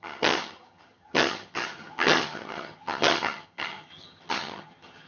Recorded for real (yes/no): no